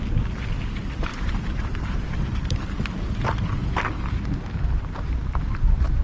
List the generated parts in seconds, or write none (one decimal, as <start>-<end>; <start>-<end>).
1.1-2.6; 5.2-6.0